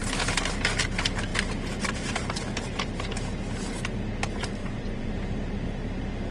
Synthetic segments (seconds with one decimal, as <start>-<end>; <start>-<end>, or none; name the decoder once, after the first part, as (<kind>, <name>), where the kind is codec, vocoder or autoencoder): 4.6-5.1 (vocoder, Vocos)